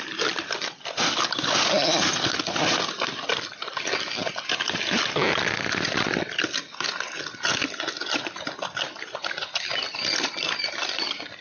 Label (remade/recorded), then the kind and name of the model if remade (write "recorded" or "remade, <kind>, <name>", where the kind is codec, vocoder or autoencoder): recorded